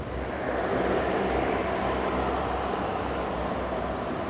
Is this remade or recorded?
recorded